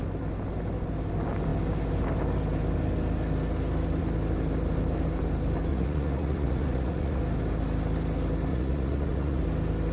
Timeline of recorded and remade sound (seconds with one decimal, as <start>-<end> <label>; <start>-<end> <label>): 0.0-5.7 recorded; 5.7-7.2 remade; 7.2-8.5 recorded; 8.5-9.4 remade; 9.4-9.9 recorded